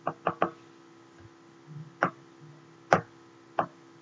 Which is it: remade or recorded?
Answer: recorded